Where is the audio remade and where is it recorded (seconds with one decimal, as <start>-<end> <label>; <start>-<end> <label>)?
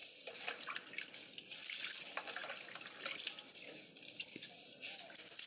0.0-5.5 recorded